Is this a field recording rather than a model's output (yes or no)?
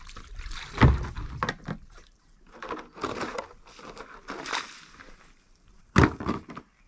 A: yes